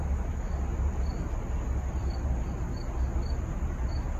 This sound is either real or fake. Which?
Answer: real